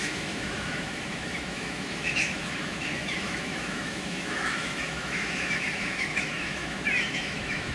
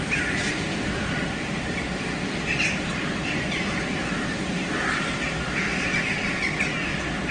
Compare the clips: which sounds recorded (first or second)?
second